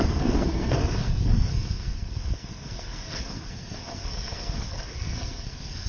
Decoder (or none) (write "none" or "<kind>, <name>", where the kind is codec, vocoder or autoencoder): codec, SNAC